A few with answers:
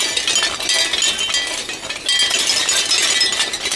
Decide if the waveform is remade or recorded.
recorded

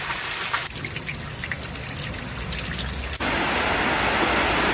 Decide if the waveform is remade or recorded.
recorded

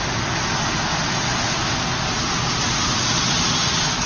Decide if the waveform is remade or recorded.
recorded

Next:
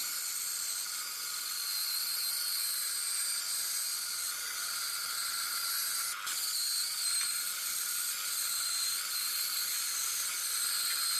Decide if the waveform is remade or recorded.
recorded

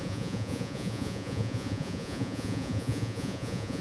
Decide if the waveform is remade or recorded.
remade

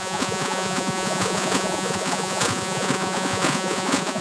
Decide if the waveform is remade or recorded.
remade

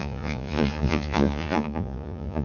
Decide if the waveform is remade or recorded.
remade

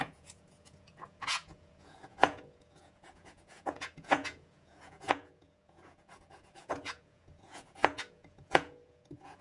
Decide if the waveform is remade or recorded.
remade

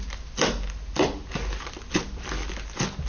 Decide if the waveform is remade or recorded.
recorded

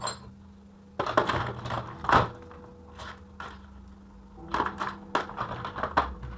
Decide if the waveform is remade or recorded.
recorded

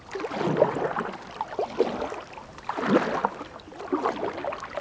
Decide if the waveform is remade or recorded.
recorded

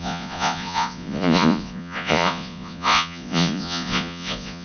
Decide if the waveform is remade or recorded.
remade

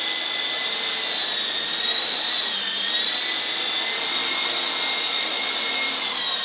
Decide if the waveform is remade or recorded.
recorded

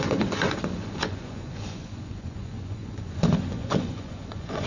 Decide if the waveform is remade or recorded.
remade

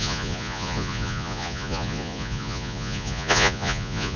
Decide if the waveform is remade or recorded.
remade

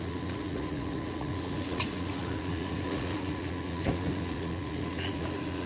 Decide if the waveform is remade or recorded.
remade